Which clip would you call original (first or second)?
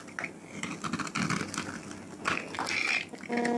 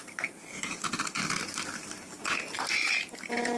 first